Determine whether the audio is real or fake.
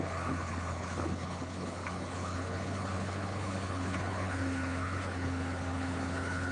fake